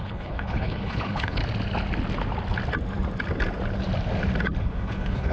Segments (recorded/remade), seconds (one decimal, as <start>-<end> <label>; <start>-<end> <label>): 0.0-1.4 remade; 1.4-4.6 recorded; 4.6-5.3 remade

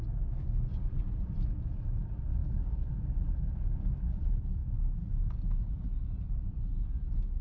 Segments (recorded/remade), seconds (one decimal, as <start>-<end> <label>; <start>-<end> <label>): 0.0-2.4 recorded; 2.4-2.9 remade; 2.9-7.4 recorded